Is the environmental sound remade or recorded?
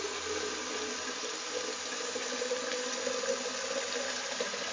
recorded